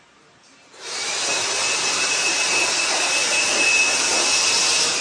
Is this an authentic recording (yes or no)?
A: no